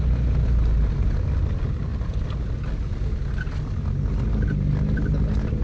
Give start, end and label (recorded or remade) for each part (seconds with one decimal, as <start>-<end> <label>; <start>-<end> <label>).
0.0-5.6 recorded